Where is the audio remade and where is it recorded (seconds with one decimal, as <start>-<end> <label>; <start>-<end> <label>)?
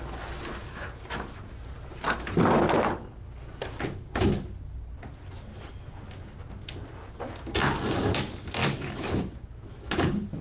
0.0-8.6 recorded; 8.6-10.4 remade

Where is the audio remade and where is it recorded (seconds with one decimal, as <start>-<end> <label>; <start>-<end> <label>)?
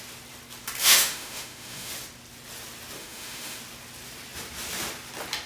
0.0-0.8 recorded; 0.8-1.9 remade; 1.9-3.0 recorded; 3.0-3.6 remade; 3.6-5.5 recorded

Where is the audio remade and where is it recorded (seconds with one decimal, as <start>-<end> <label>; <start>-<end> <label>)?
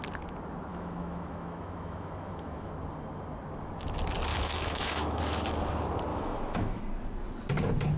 0.0-0.7 recorded; 0.7-2.7 remade; 2.7-4.3 recorded; 4.3-5.2 remade; 5.2-6.1 recorded; 6.1-6.8 remade; 6.8-8.0 recorded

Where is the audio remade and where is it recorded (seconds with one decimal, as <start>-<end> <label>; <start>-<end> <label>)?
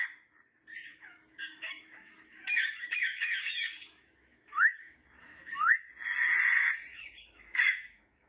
0.0-0.9 recorded; 0.9-5.7 remade; 5.7-6.9 recorded; 6.9-8.3 remade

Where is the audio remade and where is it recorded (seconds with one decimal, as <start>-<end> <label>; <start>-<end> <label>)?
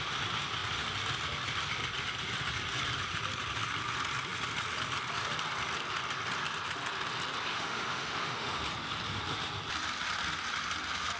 0.0-7.5 recorded; 7.5-8.6 remade; 8.6-11.2 recorded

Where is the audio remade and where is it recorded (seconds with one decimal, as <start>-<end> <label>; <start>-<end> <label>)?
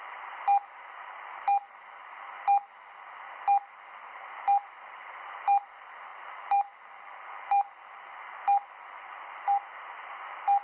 0.0-10.6 recorded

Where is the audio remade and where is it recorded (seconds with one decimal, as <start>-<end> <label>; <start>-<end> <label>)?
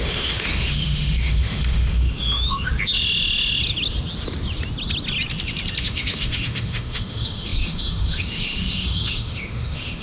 0.0-2.7 remade; 2.7-5.8 recorded; 5.8-10.0 remade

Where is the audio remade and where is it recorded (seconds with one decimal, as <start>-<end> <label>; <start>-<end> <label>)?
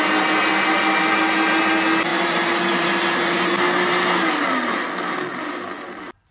0.0-6.3 recorded